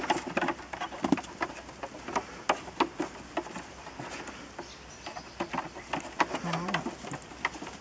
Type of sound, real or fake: real